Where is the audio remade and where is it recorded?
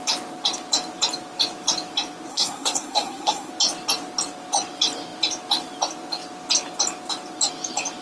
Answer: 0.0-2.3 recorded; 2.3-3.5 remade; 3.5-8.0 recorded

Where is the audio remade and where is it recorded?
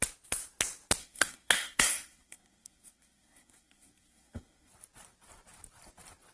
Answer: 0.0-1.0 recorded; 1.0-4.7 remade; 4.7-6.3 recorded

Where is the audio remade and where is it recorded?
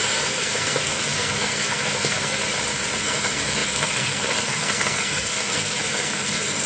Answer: 0.0-2.4 remade; 2.4-3.0 recorded; 3.0-6.7 remade